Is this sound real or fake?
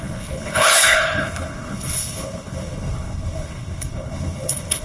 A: fake